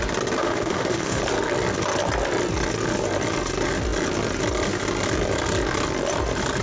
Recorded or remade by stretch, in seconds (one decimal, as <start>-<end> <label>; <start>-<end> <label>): 0.0-0.4 recorded; 0.4-1.2 remade; 1.2-6.6 recorded